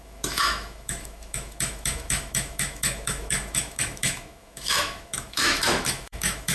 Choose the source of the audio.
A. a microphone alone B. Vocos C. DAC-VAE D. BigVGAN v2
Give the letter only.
C